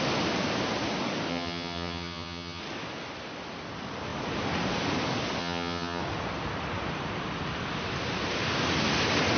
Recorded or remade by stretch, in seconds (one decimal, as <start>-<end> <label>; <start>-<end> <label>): 0.0-1.3 recorded; 1.3-2.6 remade; 2.6-5.4 recorded; 5.4-6.0 remade; 6.0-9.4 recorded